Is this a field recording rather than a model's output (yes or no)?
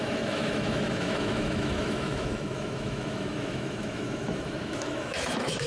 no